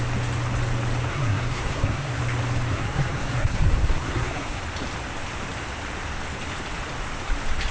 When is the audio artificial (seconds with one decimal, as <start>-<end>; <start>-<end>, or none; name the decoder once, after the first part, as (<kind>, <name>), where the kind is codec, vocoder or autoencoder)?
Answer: 1.1-2.2 (codec, SNAC); 2.7-4.6